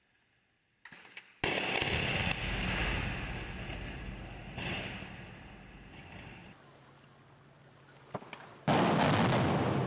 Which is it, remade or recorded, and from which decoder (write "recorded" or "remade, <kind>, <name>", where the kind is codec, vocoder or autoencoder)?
recorded